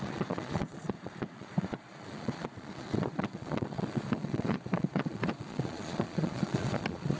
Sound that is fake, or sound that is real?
fake